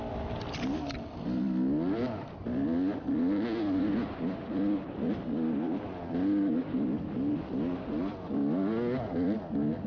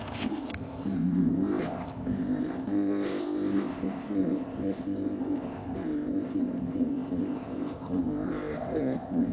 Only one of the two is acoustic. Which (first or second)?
first